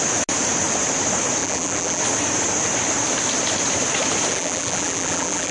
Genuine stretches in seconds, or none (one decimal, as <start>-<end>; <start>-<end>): 0.0-1.4; 2.0-4.3